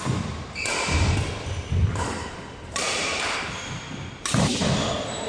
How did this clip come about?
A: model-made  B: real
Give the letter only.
A